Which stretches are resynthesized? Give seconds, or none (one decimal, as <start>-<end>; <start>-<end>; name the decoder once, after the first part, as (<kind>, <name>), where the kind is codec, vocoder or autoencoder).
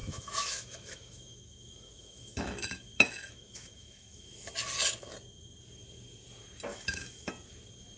0.0-4.5 (autoencoder, DAC-VAE); 6.7-7.3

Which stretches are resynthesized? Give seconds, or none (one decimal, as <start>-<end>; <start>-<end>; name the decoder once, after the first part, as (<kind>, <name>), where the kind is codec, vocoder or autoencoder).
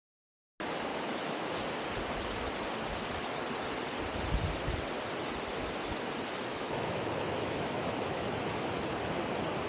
0.9-1.7 (autoencoder, DAC-VAE); 6.5-9.0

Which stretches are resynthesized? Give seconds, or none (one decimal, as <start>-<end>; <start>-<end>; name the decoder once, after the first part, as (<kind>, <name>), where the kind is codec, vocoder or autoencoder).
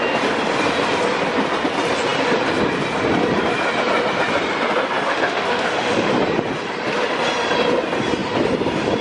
5.1-6.1 (autoencoder, DAC-VAE)